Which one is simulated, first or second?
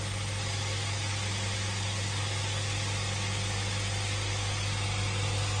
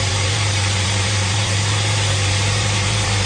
second